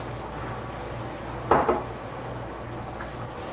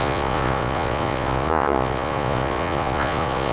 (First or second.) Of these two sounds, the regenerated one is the second